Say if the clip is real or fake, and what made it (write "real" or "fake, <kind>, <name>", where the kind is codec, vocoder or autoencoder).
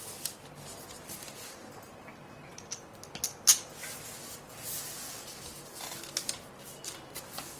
real